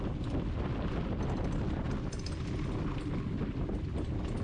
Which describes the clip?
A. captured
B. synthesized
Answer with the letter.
A